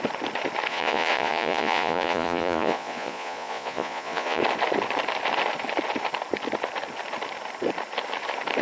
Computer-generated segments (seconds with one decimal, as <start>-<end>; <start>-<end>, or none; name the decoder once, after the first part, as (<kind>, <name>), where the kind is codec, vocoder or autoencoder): 0.7-4.4 (vocoder, Vocos)